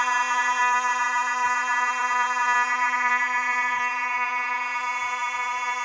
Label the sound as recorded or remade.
remade